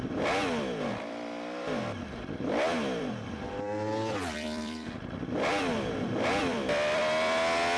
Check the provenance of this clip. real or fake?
fake